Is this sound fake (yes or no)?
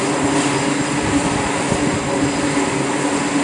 no